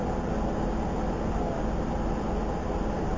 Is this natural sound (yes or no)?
yes